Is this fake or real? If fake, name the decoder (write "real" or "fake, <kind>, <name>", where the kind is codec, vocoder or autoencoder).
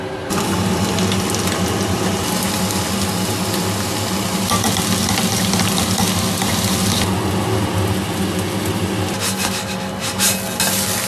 real